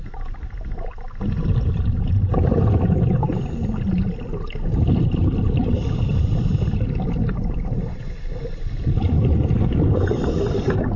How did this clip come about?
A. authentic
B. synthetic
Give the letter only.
B